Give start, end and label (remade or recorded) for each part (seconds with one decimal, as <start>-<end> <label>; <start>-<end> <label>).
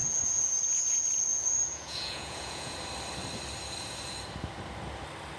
0.0-0.5 remade; 0.5-1.3 recorded; 1.3-2.7 remade; 2.7-5.4 recorded